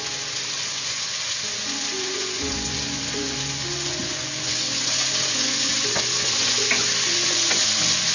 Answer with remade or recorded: remade